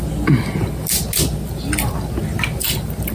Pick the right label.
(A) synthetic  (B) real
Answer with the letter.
B